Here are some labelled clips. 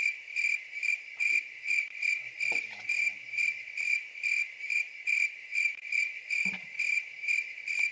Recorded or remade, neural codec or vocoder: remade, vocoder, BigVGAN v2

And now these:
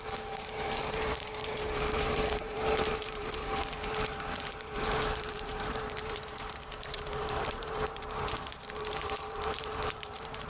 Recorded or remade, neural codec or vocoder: remade, vocoder, BigVGAN v2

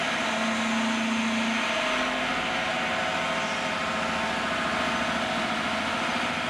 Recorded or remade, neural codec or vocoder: recorded